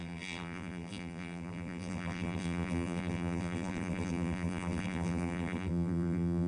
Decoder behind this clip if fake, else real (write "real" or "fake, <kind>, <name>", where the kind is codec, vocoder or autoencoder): fake, vocoder, BigVGAN v2